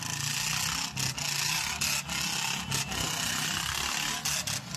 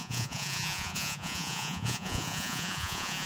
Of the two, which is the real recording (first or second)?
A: first